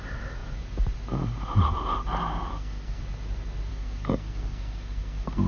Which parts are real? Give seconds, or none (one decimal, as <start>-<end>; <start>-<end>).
0.0-2.5; 3.0-3.7